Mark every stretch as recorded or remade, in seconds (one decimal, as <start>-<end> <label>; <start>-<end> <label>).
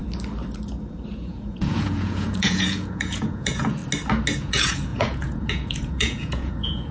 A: 0.0-1.1 recorded; 1.1-3.8 remade; 3.8-4.4 recorded; 4.4-6.9 remade